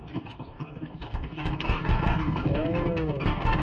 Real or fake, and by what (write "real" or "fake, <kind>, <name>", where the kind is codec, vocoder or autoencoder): fake, codec, DAC